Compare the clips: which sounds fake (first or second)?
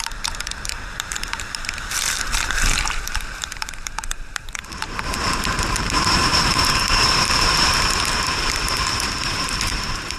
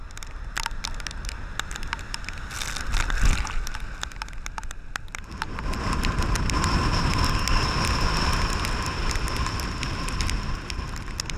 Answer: first